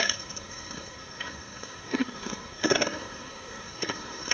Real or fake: fake